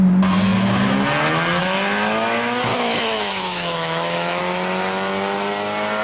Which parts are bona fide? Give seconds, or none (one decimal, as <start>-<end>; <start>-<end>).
0.0-2.7; 4.4-6.0